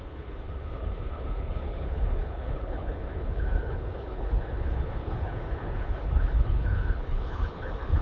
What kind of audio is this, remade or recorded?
remade